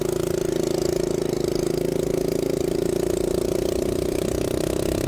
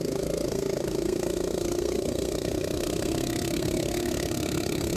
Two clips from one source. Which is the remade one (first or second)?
second